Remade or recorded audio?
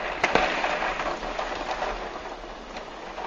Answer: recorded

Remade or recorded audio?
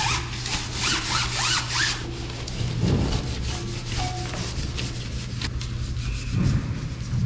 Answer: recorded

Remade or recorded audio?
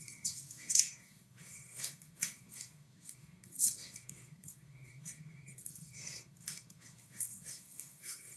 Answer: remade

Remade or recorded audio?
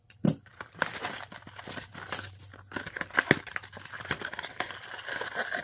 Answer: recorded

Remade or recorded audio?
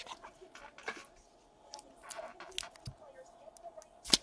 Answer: recorded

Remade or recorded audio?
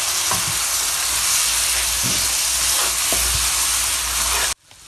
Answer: recorded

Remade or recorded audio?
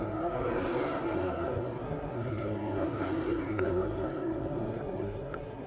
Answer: remade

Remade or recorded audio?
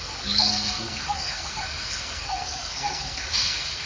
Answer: remade